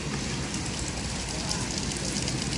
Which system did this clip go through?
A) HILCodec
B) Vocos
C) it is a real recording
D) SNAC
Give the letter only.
C